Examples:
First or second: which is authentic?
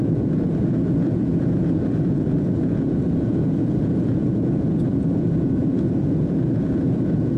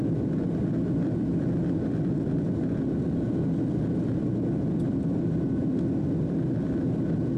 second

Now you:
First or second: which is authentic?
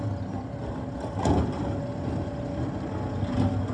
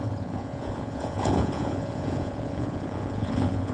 first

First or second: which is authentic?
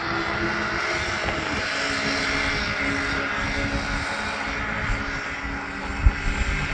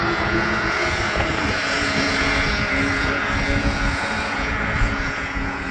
first